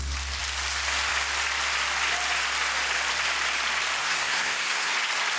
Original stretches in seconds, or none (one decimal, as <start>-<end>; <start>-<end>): 0.0-4.0; 4.9-5.4